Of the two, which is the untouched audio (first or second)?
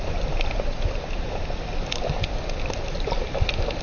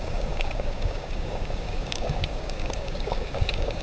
first